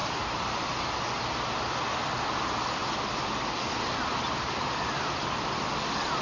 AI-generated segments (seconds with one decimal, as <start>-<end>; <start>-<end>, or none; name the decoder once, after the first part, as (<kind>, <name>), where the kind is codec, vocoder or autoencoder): 0.0-0.8 (vocoder, BigVGAN v2)